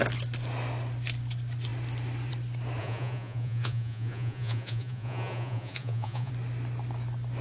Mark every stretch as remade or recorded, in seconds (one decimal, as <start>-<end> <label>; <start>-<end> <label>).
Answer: 0.0-2.8 recorded; 2.8-6.3 remade; 6.3-7.4 recorded